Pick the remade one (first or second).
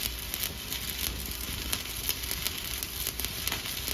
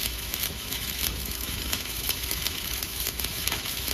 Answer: second